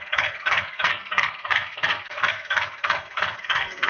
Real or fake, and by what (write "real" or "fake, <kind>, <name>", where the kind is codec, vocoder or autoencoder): fake, codec, SNAC